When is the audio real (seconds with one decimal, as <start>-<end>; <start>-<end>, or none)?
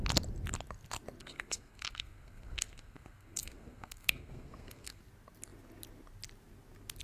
0.0-1.2; 5.0-7.0